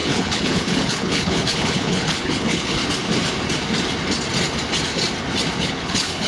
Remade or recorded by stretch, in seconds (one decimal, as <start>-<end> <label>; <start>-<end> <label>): 0.0-2.8 remade; 2.8-5.6 recorded; 5.6-6.3 remade